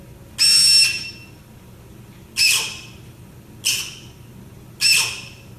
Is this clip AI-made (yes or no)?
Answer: no